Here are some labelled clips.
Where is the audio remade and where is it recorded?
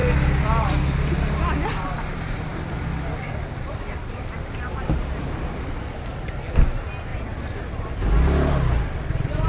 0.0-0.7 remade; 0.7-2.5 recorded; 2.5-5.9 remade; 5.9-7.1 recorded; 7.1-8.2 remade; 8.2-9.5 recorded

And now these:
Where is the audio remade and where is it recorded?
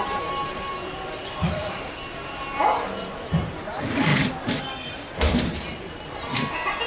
0.0-4.1 remade; 4.1-4.9 recorded; 4.9-6.9 remade